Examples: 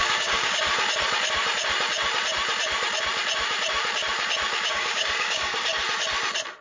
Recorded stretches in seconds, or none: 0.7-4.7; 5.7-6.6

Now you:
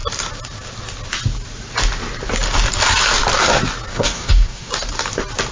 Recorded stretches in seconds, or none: 0.0-3.9; 4.7-5.5

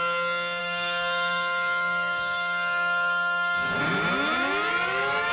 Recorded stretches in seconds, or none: 0.0-0.6; 3.8-5.3

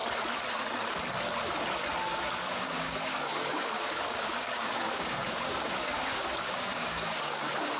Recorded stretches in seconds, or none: 0.0-2.0

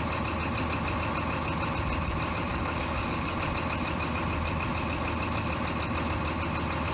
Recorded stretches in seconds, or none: 0.0-2.5; 3.3-6.9